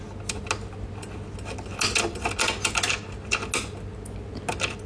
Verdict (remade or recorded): recorded